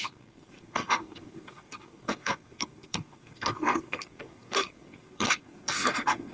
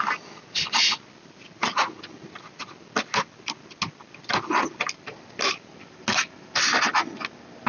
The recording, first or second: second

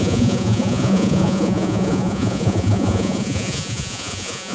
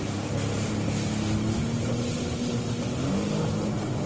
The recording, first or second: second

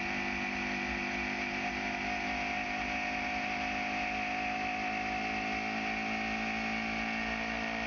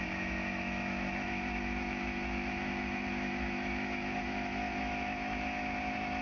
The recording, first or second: first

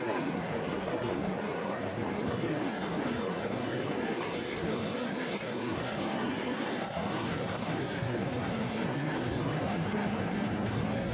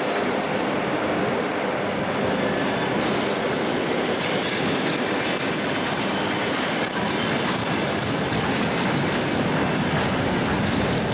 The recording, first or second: second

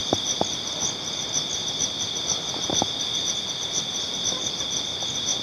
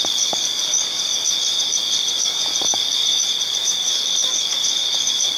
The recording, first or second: first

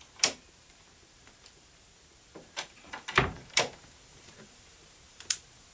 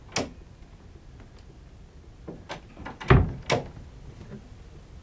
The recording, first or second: second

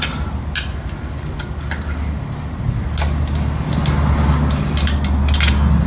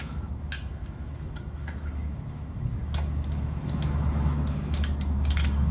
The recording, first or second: first